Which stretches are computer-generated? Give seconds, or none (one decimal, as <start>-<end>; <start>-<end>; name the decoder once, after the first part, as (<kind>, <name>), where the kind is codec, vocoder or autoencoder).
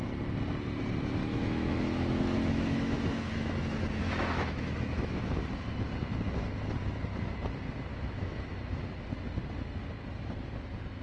1.2-5.3 (autoencoder, DAC-VAE); 7.9-8.7